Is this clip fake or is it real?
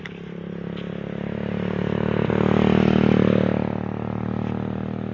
real